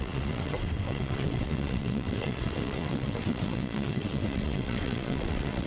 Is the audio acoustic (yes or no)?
no